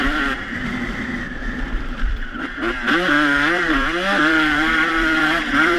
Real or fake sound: fake